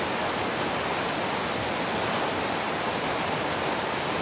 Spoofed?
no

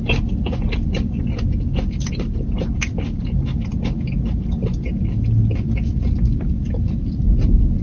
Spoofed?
no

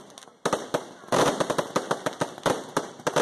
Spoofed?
no